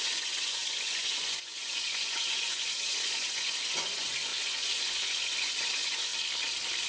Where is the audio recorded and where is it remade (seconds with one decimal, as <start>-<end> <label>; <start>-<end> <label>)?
0.0-6.1 remade; 6.1-6.9 recorded